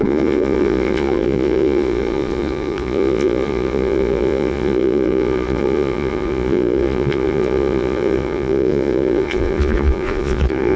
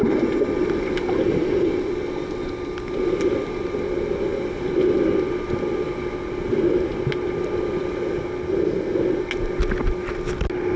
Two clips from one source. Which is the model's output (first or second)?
first